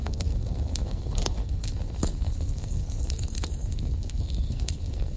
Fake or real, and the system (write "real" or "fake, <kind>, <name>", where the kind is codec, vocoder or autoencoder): fake, codec, SNAC